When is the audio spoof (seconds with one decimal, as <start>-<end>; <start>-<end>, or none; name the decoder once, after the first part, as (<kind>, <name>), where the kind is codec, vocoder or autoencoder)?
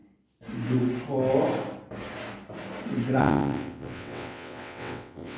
3.2-5.4 (vocoder, WaveNeXt)